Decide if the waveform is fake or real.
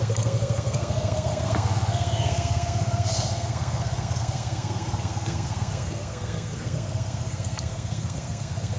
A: fake